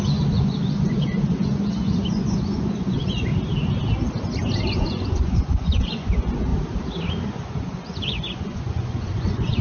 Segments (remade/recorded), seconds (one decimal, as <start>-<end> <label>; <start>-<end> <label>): 0.0-3.3 remade; 3.3-4.6 recorded; 4.6-6.5 remade; 6.5-7.3 recorded; 7.3-9.6 remade